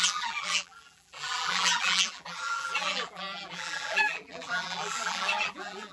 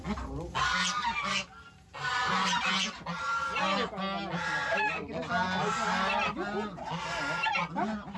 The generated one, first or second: first